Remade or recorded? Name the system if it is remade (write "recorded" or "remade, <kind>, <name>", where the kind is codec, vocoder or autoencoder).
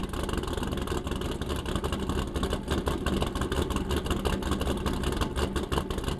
recorded